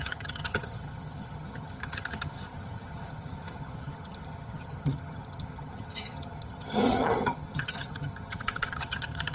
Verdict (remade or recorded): remade